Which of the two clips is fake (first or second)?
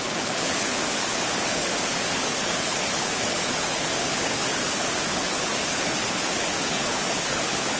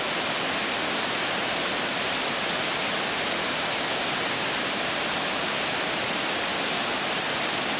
first